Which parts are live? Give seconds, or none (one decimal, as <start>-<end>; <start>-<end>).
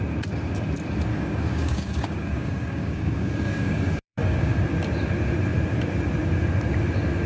0.0-1.1; 4.6-7.3